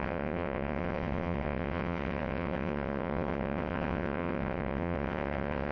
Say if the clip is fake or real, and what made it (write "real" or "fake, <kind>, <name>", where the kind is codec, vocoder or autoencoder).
fake, vocoder, WaveNeXt